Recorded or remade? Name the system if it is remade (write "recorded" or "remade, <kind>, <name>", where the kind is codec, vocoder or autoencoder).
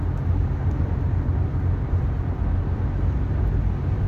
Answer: recorded